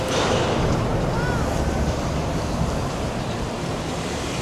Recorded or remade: recorded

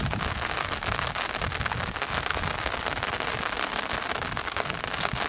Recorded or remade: recorded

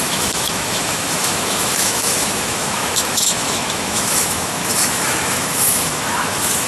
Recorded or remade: remade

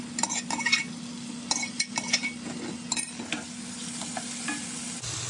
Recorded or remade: recorded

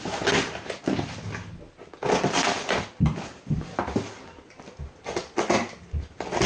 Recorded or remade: recorded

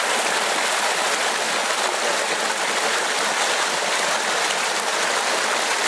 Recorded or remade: recorded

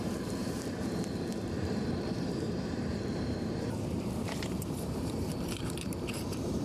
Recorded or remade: remade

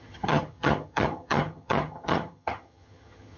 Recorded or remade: remade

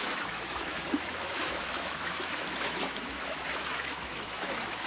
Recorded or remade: remade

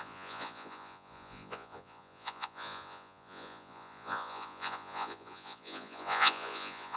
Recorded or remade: remade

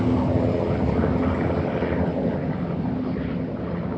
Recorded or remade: recorded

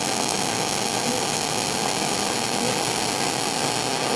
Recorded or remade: recorded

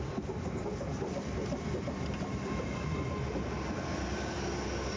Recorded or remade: remade